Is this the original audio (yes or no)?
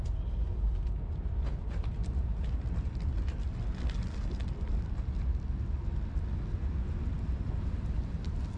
yes